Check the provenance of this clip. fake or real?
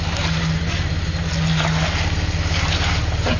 real